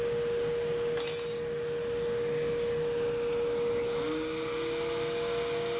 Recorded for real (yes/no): yes